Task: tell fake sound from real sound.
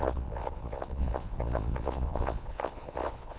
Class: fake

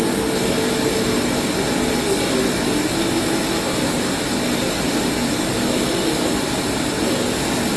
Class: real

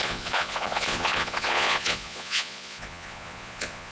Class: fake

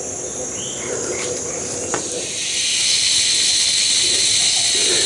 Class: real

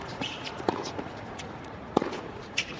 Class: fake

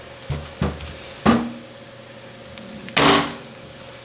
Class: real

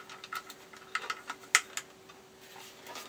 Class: real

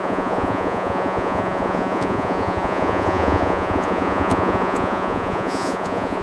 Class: fake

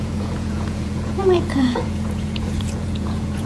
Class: fake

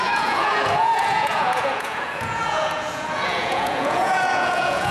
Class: fake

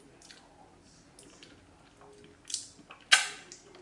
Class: real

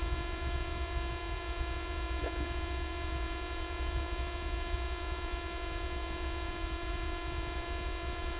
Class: fake